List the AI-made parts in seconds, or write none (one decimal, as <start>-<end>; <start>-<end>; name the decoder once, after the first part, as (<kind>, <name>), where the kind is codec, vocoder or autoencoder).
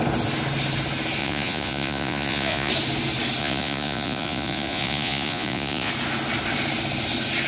1.2-2.7 (vocoder, Vocos); 3.4-5.9